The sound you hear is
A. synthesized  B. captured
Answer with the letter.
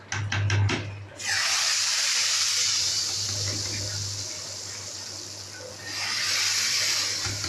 B